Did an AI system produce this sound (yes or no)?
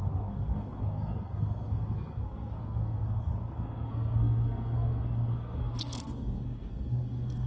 yes